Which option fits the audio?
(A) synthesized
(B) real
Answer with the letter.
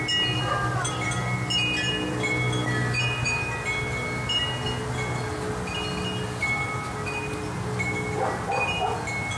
B